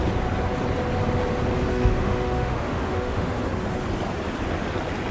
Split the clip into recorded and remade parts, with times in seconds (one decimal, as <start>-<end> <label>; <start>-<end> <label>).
0.0-1.7 recorded; 1.7-3.4 remade; 3.4-5.1 recorded